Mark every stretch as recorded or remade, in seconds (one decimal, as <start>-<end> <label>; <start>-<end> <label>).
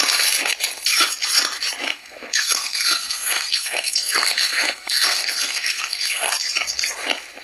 0.0-1.9 recorded; 1.9-6.3 remade; 6.3-7.4 recorded